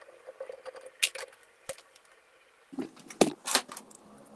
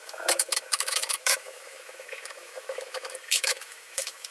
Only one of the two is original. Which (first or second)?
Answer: first